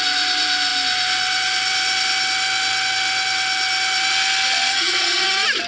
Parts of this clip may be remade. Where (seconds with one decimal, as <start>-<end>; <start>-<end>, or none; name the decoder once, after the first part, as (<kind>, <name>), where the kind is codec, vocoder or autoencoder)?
4.7-5.2 (vocoder, HiFi-GAN)